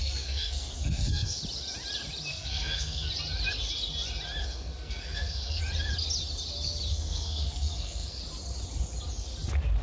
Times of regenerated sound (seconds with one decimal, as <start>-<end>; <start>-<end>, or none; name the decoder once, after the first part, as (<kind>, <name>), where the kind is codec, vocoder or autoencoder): 0.0-1.4 (codec, SNAC); 2.3-3.1; 4.4-5.6; 6.9-8.2